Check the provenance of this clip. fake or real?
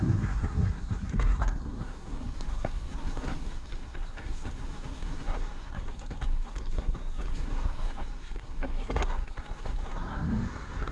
fake